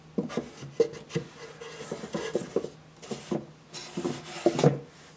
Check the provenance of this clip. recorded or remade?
recorded